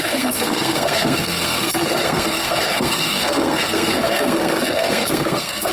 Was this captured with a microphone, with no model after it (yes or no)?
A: no